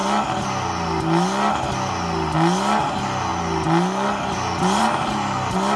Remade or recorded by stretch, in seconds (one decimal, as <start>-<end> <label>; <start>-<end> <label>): 0.0-5.8 recorded